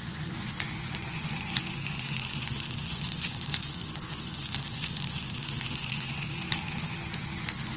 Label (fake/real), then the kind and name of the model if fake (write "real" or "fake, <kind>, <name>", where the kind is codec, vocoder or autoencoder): fake, vocoder, Vocos